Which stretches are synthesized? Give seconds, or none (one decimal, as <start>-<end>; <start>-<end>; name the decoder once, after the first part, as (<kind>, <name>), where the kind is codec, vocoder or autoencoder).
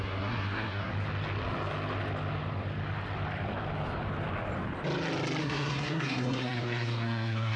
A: 0.0-0.9 (codec, SNAC); 5.4-7.6